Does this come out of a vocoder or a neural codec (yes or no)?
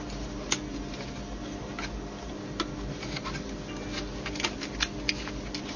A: no